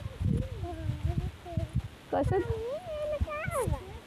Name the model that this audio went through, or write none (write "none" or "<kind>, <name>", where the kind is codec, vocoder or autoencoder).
none